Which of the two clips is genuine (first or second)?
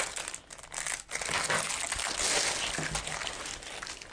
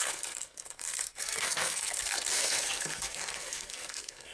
first